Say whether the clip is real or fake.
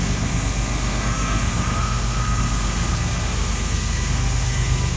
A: fake